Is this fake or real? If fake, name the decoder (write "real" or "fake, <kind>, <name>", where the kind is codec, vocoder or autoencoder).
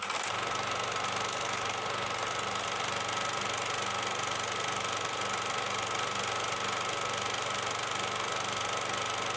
real